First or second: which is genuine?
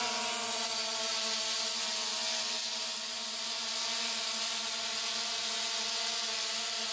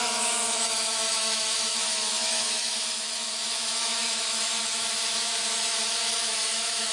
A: first